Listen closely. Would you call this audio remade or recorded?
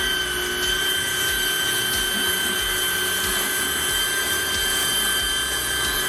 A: recorded